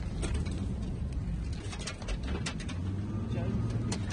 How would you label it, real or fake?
real